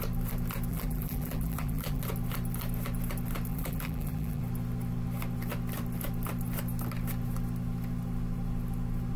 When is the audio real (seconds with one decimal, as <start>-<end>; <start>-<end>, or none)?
0.0-0.7; 2.0-3.5; 4.4-9.2